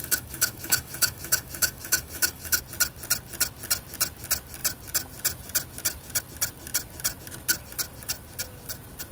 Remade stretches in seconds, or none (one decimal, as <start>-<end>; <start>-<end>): 0.0-2.6

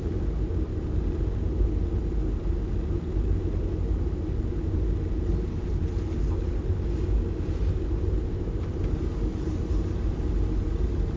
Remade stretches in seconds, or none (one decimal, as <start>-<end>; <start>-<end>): none

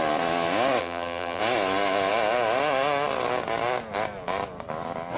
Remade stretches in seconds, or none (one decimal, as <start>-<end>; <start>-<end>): 0.8-1.4